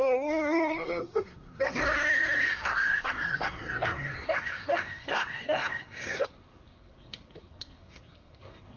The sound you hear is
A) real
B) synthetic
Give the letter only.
B